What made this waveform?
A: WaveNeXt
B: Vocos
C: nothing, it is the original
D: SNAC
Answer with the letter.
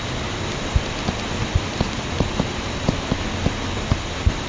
C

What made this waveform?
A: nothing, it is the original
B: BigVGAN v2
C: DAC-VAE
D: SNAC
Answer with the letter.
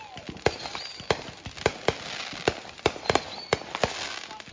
A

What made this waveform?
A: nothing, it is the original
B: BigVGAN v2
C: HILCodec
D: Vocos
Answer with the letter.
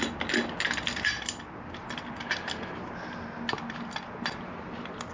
A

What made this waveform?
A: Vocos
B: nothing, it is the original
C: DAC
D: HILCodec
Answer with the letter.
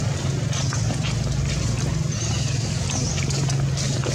B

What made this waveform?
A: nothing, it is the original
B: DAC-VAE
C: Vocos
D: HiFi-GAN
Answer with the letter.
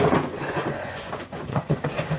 C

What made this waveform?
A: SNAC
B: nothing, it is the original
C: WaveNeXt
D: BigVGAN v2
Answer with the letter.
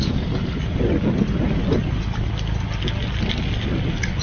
B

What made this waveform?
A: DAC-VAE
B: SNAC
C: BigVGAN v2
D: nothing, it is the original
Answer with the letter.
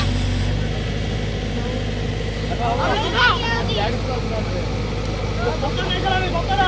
D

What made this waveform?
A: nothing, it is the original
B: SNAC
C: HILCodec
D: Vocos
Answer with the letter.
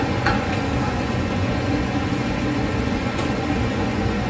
D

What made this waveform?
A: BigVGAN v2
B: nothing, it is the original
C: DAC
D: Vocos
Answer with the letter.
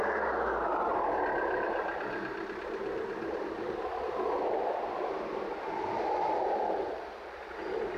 B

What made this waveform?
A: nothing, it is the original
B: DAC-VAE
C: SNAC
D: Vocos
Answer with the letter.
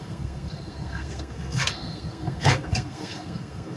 C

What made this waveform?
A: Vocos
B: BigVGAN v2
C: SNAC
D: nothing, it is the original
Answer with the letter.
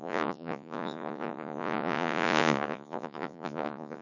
A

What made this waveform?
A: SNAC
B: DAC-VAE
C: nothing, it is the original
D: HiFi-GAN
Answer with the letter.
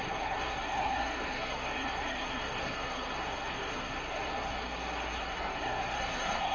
A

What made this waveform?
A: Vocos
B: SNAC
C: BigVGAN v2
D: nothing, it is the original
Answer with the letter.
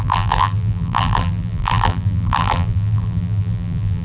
C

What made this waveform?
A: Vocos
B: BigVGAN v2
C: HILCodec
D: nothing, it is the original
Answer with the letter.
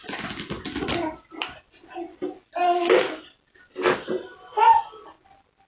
D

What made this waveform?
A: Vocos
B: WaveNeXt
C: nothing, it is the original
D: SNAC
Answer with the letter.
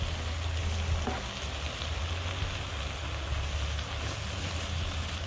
C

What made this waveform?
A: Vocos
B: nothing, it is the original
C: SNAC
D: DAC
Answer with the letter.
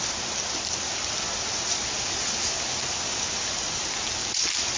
B